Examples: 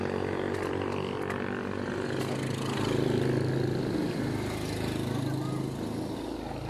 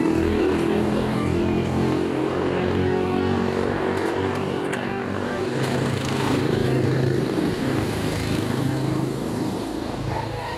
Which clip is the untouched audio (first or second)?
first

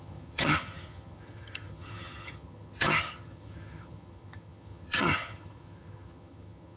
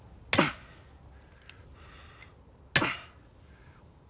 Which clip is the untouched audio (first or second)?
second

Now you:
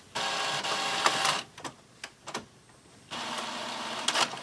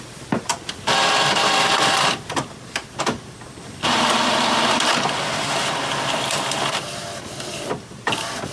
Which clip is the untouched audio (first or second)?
first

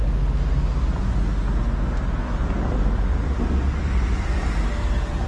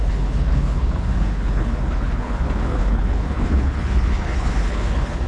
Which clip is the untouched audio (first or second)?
first